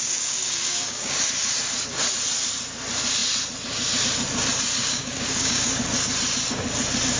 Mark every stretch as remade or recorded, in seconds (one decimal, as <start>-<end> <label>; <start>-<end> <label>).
0.0-1.2 remade; 1.2-4.8 recorded; 4.8-5.8 remade; 5.8-7.2 recorded